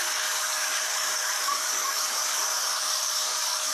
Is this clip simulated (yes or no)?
yes